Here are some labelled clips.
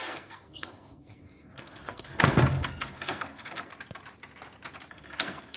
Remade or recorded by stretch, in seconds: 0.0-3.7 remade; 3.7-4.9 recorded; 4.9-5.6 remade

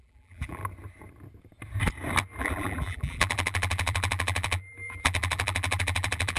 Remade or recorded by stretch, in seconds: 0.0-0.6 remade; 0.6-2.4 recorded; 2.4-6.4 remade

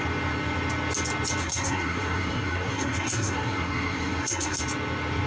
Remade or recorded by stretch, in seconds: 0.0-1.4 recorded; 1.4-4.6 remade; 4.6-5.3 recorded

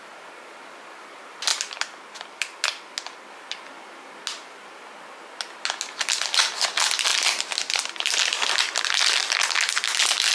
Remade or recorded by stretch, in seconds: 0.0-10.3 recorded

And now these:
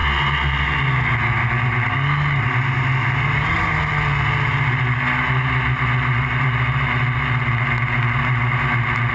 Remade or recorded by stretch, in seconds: 0.0-9.1 recorded

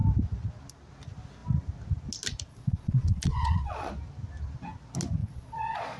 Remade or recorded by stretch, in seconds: 0.0-2.5 recorded; 2.5-3.9 remade; 3.9-5.2 recorded; 5.2-6.0 remade

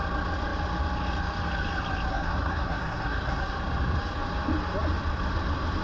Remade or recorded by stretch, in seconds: 0.0-2.1 recorded; 2.1-3.4 remade; 3.4-5.8 recorded